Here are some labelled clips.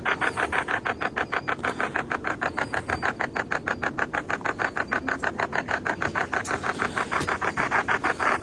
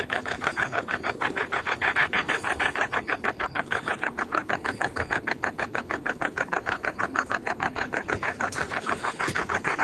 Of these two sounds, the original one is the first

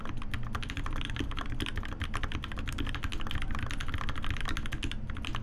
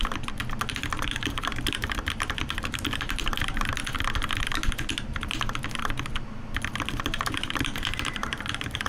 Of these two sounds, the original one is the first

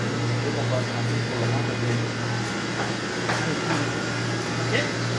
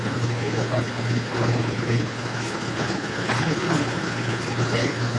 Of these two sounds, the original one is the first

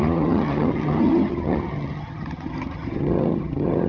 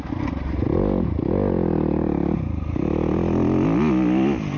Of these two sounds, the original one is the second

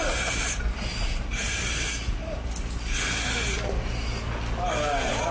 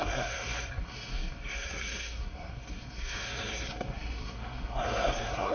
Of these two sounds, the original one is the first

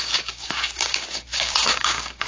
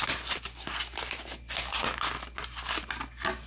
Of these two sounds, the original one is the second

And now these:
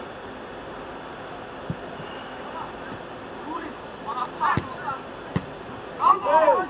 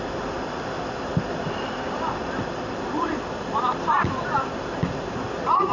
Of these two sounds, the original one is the first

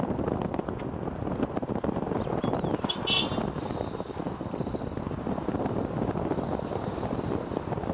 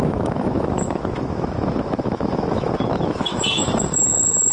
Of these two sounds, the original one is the first